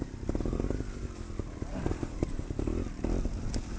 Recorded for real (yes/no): yes